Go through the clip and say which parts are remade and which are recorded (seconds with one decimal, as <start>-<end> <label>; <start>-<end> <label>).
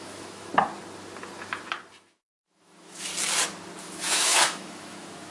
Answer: 0.0-0.5 remade; 0.5-2.0 recorded; 2.0-3.1 remade; 3.1-3.8 recorded; 3.8-5.3 remade